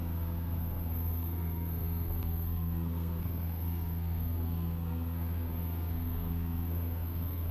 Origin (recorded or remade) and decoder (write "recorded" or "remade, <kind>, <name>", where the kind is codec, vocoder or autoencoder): remade, codec, SNAC